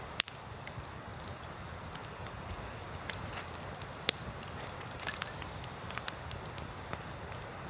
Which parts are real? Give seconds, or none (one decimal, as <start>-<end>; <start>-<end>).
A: 0.0-7.7

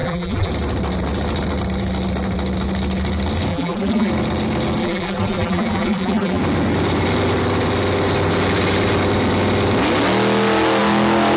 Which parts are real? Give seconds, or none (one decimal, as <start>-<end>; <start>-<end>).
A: 0.5-3.5; 4.1-4.8; 6.4-11.4